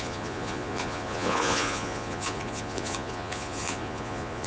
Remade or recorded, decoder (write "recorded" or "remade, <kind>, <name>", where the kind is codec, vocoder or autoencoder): remade, vocoder, Vocos